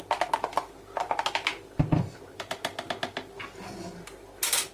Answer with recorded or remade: recorded